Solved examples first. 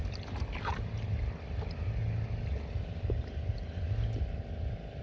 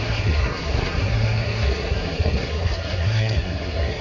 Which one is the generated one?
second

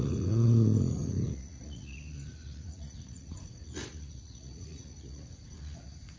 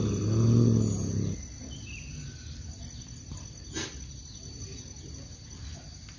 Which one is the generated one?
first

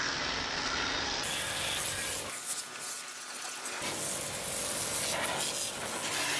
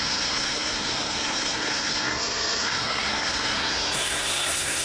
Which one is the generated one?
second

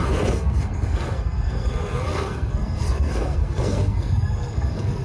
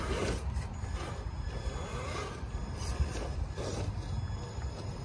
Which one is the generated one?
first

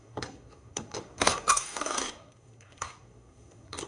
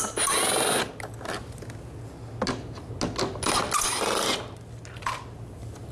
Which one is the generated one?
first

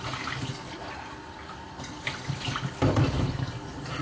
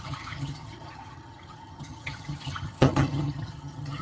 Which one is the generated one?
second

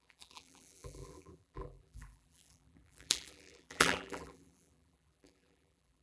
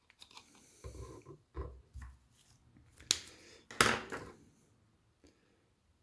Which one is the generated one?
first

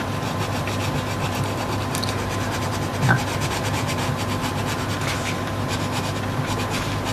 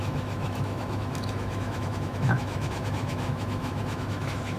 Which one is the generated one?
second